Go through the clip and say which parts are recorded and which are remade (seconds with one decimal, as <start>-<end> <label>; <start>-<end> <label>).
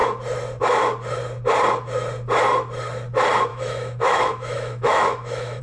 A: 0.0-3.5 recorded; 3.5-5.6 remade